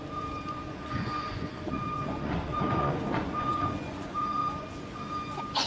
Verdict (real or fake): fake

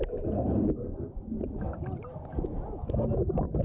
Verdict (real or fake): real